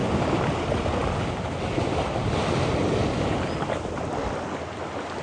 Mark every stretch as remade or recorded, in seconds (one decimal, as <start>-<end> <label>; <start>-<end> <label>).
0.0-5.2 recorded